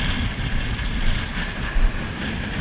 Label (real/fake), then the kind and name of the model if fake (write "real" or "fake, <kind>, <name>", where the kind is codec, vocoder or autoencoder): real